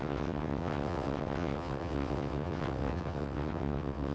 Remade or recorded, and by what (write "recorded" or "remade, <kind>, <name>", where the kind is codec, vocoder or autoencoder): remade, vocoder, WaveNeXt